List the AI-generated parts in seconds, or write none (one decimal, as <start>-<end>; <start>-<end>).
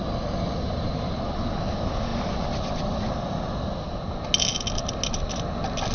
none